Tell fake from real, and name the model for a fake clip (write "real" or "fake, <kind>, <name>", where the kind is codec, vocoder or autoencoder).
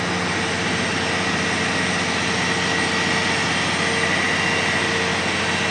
real